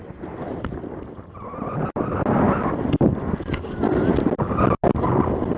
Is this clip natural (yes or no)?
yes